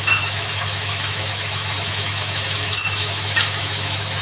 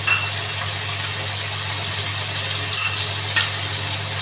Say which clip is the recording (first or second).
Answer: second